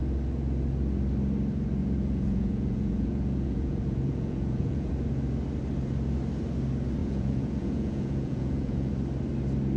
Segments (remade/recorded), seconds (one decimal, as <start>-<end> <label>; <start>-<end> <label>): 0.0-1.8 recorded; 1.8-4.9 remade; 4.9-7.0 recorded; 7.0-8.9 remade; 8.9-9.8 recorded